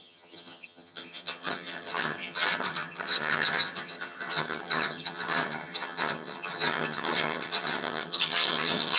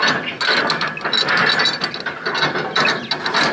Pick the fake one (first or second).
first